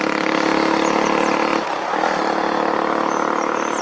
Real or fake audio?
real